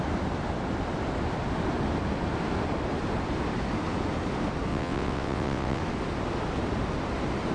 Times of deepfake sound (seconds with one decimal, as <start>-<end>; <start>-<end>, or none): 4.7-5.8